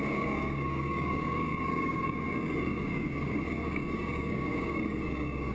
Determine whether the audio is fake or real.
fake